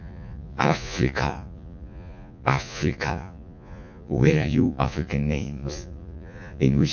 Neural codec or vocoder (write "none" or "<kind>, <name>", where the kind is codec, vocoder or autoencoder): vocoder, Vocos